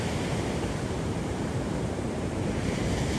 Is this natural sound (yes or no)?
no